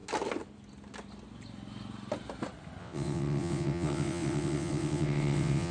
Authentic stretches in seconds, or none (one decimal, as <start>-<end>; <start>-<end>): 0.0-2.8